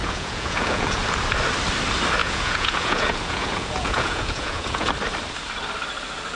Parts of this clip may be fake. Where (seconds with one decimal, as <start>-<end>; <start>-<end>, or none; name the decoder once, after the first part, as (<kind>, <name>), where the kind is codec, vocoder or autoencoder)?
0.0-1.0 (vocoder, Vocos); 2.2-4.9